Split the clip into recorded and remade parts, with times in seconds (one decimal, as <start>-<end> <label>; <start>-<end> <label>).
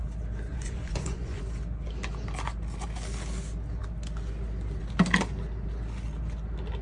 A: 0.0-0.5 recorded; 0.5-1.4 remade; 1.4-6.8 recorded